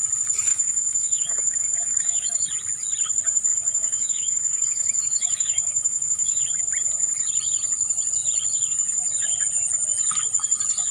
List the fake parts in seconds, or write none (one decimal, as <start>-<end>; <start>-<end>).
0.5-2.5; 3.5-6.4